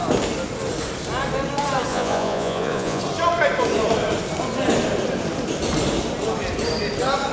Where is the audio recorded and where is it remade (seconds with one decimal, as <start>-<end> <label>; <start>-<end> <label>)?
0.0-1.9 recorded; 1.9-3.0 remade; 3.0-7.3 recorded